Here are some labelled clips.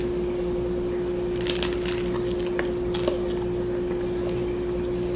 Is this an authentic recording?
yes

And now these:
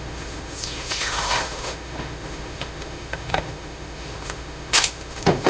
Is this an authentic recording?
no